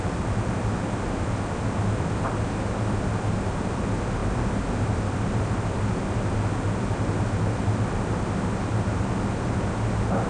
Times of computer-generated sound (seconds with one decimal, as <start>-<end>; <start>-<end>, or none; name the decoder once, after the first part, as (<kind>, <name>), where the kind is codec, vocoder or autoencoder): none

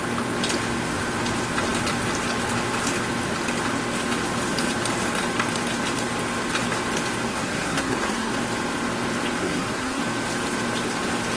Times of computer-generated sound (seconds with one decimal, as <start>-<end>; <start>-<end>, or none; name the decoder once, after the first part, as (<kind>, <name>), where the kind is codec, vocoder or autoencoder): 7.3-8.3 (codec, SNAC); 9.4-10.0

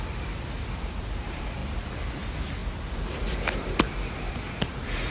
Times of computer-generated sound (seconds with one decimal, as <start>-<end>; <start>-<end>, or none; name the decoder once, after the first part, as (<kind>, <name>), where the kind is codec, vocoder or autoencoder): 0.0-1.6 (vocoder, BigVGAN v2); 2.1-5.1